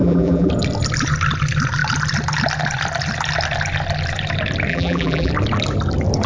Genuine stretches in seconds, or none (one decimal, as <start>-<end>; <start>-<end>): 0.5-4.7; 5.3-6.3